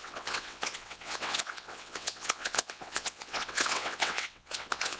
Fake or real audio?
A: fake